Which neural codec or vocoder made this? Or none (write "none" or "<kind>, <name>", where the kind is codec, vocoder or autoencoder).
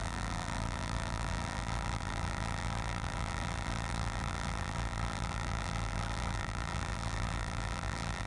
vocoder, BigVGAN v2